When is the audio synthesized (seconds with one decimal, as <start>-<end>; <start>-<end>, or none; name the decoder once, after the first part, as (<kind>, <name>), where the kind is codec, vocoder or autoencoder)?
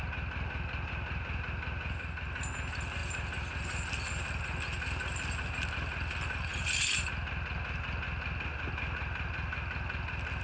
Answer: none